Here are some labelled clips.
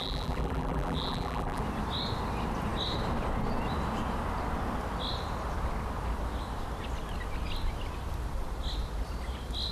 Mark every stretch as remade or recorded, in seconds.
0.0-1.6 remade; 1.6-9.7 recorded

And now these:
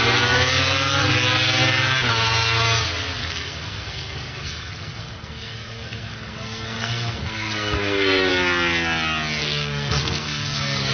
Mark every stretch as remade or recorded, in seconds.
0.0-3.2 recorded; 3.2-8.3 remade; 8.3-9.4 recorded; 9.4-10.9 remade

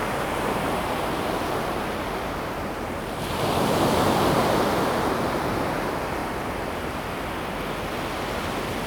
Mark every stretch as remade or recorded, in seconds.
0.0-4.6 remade; 4.6-6.2 recorded; 6.2-7.0 remade; 7.0-8.9 recorded